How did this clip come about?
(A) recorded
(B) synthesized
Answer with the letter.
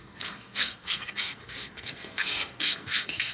B